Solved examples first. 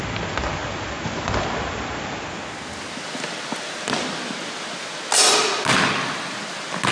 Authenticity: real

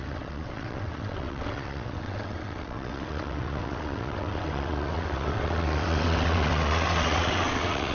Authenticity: fake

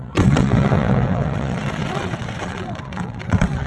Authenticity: fake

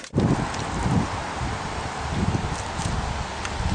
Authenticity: real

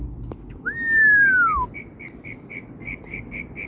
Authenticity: real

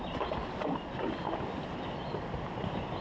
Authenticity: real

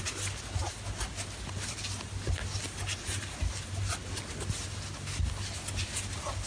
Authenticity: real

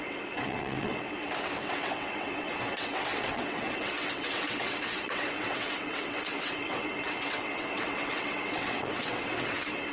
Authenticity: fake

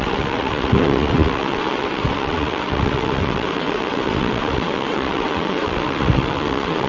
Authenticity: fake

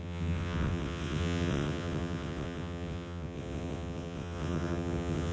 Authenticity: fake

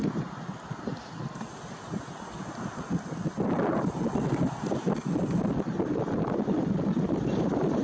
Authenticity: real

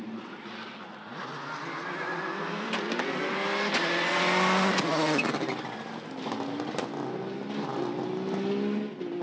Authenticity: real